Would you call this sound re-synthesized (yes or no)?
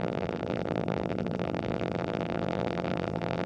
yes